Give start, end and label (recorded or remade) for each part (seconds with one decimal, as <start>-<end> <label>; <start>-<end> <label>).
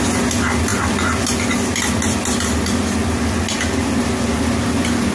0.0-5.1 recorded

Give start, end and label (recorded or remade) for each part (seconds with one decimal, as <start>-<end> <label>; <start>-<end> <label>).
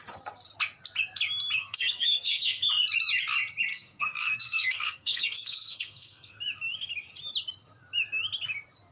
0.0-1.6 recorded; 1.6-2.7 remade; 2.7-3.7 recorded; 3.7-6.4 remade; 6.4-8.9 recorded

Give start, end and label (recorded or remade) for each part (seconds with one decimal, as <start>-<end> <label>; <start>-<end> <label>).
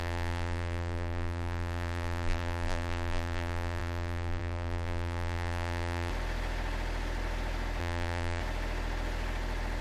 0.0-6.1 remade; 6.1-7.8 recorded; 7.8-8.4 remade; 8.4-9.8 recorded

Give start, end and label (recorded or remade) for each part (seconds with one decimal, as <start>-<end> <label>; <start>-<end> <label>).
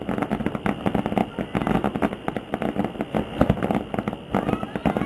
0.0-5.1 recorded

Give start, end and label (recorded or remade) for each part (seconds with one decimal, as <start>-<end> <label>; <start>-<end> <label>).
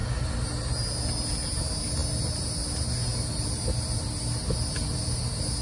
0.0-5.6 recorded